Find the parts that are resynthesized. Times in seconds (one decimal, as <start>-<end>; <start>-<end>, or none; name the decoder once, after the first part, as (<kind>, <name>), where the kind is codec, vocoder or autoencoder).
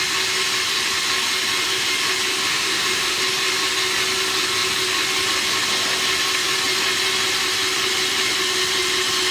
2.5-3.2 (autoencoder, DAC-VAE)